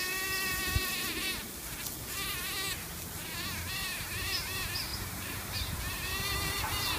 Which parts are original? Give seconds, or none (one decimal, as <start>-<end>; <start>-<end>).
0.0-4.9; 5.7-7.0